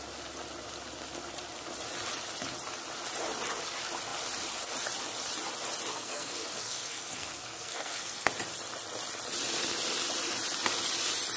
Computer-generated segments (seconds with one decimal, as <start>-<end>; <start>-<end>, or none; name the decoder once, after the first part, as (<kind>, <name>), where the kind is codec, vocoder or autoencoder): 5.9-8.3 (codec, SNAC)